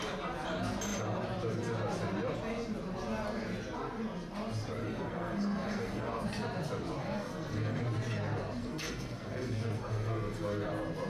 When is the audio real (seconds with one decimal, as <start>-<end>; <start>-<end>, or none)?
0.0-4.8; 6.2-7.0; 7.8-8.6; 10.7-11.1